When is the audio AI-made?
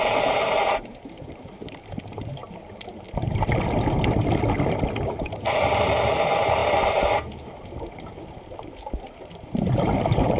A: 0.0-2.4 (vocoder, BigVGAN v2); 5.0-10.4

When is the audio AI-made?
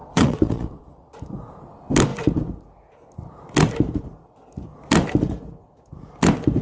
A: 0.0-1.1 (vocoder, Vocos)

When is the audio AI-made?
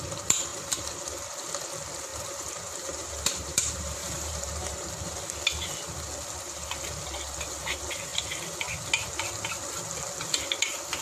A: 0.5-1.0 (vocoder, BigVGAN v2); 2.1-4.9